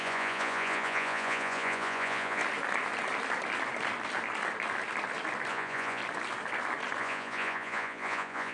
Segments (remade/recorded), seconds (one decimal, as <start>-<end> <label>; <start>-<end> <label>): 0.0-2.4 remade; 2.4-5.5 recorded; 5.5-6.0 remade; 6.0-7.0 recorded; 7.0-8.5 remade